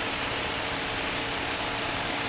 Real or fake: fake